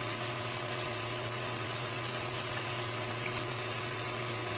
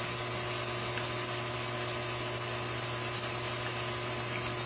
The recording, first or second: second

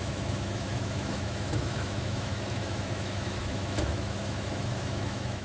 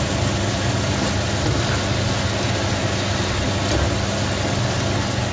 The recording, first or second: second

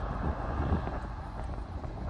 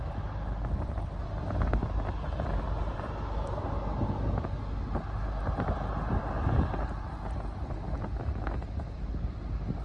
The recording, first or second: second